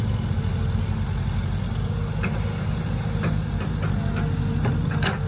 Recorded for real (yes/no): yes